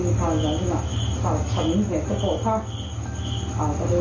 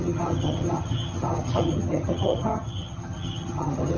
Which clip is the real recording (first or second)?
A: first